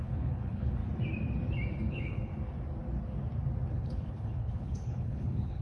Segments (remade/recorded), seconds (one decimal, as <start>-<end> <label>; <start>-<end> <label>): 0.0-0.8 remade; 0.8-1.9 recorded; 1.9-2.3 remade; 2.3-3.7 recorded; 3.7-5.6 remade